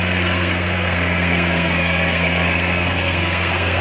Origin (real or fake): fake